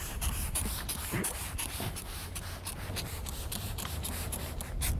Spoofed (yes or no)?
yes